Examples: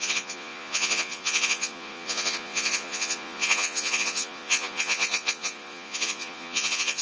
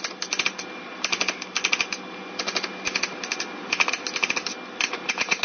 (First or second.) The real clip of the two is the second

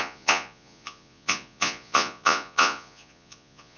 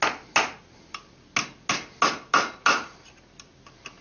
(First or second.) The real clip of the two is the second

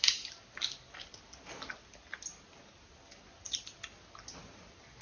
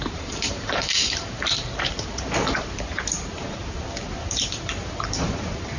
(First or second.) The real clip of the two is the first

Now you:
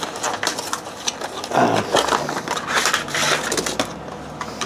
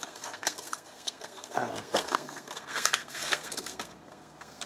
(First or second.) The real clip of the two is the first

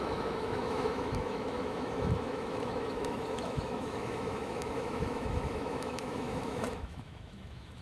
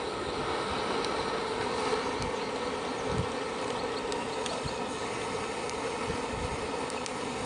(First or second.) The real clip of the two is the second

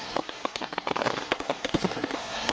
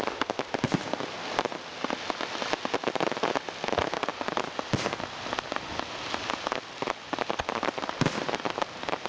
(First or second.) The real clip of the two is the second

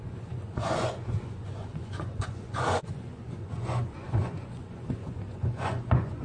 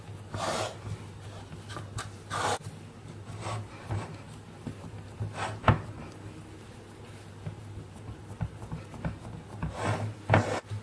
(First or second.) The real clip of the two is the second